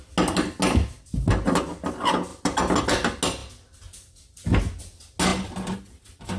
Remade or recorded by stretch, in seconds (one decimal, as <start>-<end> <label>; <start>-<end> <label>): 0.0-6.4 recorded